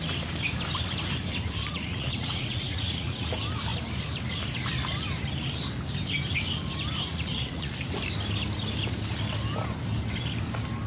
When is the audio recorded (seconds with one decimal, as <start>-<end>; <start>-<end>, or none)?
0.0-1.6; 3.3-7.1; 7.7-10.9

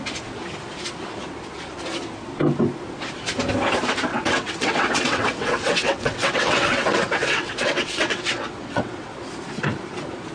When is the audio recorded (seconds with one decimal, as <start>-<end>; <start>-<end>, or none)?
0.0-4.1; 9.1-10.3